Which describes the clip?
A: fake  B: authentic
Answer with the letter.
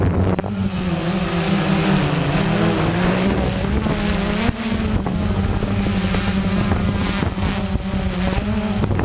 B